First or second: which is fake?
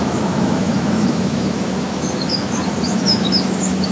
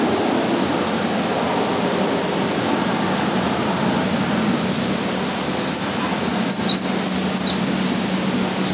first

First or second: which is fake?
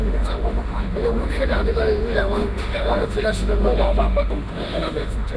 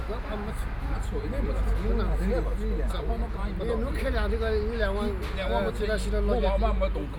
first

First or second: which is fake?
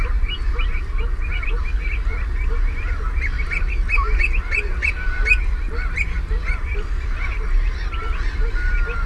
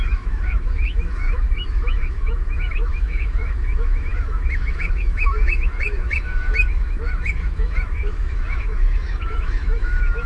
second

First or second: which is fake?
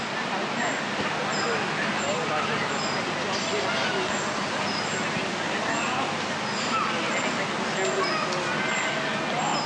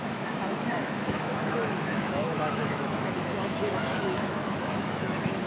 second